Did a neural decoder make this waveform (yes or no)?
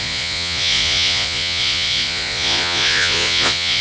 yes